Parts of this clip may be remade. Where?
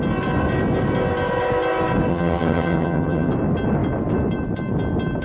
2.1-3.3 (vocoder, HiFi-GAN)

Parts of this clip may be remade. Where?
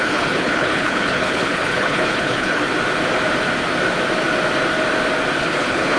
0.0-2.6 (codec, HILCodec); 5.4-6.0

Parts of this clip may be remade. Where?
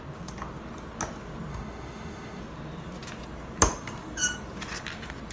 1.5-2.4 (autoencoder, DAC-VAE)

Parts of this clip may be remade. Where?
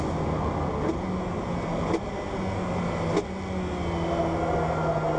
none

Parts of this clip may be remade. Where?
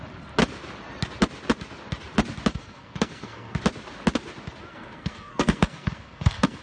2.5-3.6 (codec, SNAC); 4.7-6.6